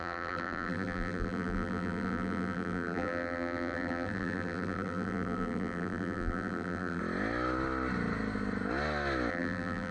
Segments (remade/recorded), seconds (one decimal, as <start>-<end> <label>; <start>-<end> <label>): 0.0-7.0 remade; 7.0-9.3 recorded; 9.3-9.9 remade